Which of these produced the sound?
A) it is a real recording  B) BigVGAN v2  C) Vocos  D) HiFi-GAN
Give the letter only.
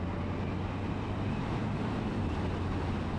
A